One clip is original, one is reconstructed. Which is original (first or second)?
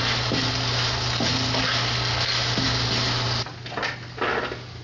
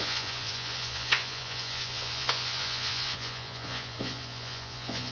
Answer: first